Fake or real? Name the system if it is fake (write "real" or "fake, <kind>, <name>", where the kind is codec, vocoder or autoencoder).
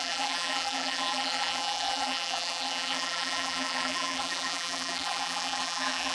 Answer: fake, vocoder, BigVGAN v2